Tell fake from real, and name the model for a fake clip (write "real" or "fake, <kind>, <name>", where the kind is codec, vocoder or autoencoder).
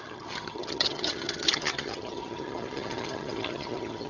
fake, vocoder, HiFi-GAN